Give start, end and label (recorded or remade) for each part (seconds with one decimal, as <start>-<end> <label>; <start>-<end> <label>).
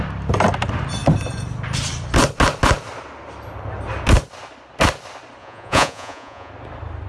0.0-5.4 recorded; 5.4-6.5 remade; 6.5-7.1 recorded